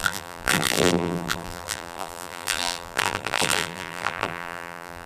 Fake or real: fake